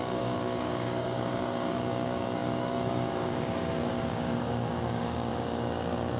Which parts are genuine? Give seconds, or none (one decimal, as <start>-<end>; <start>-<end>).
none